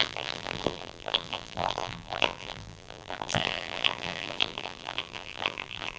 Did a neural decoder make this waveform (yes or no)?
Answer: yes